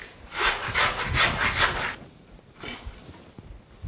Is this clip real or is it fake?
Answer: real